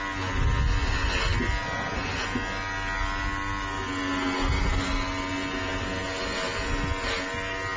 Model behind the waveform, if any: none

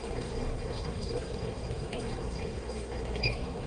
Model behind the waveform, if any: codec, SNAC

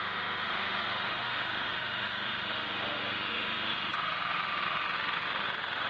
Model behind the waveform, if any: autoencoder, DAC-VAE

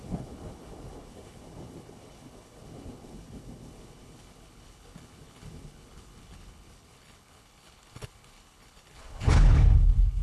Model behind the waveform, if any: codec, HILCodec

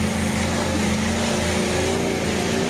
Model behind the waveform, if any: none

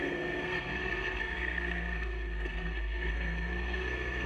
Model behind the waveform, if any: codec, SNAC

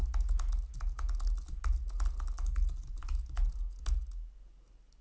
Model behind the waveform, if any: none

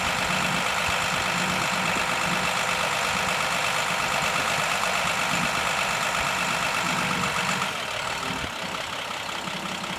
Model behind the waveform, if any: none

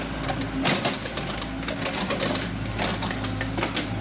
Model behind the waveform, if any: none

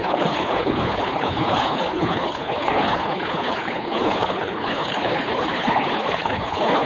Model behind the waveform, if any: codec, HILCodec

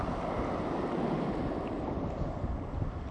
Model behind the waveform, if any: none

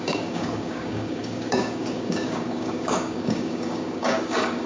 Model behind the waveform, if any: codec, DAC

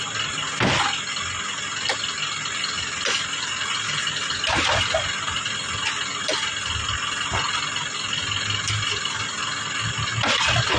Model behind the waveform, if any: none